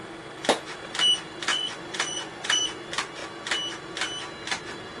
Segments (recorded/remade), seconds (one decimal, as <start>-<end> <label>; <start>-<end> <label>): 0.0-1.5 recorded; 1.5-2.6 remade; 2.6-5.0 recorded